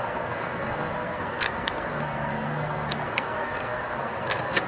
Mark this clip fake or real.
fake